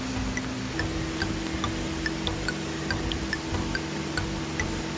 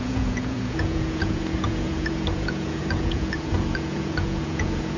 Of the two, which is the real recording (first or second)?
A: first